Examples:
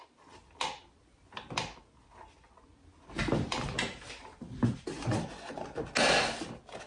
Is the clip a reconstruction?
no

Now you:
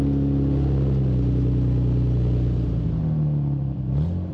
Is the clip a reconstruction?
no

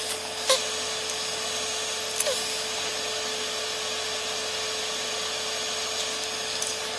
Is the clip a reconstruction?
no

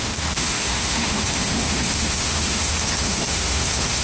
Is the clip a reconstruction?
yes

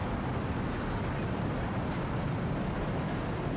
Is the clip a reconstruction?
no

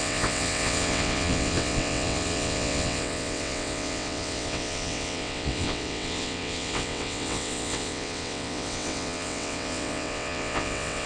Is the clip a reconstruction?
yes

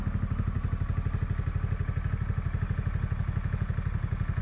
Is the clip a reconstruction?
no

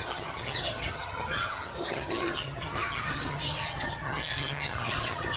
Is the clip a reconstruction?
yes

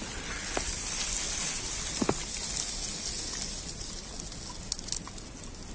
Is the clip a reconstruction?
no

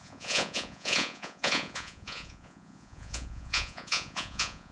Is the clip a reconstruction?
yes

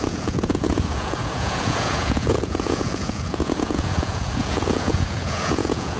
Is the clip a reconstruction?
yes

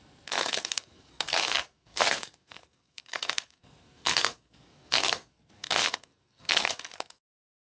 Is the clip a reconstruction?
yes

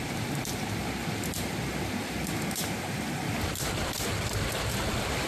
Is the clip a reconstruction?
no